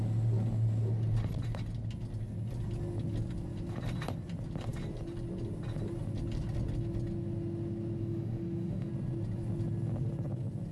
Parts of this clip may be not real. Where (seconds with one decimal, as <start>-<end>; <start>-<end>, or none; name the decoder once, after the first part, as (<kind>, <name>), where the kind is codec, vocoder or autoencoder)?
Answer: 8.0-8.9 (autoencoder, DAC-VAE)